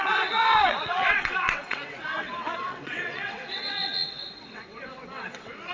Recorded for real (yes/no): no